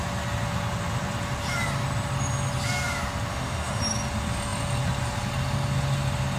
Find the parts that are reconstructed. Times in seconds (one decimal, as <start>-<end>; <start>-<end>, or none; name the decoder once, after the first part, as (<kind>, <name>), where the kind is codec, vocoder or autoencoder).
3.3-3.8 (autoencoder, DAC-VAE)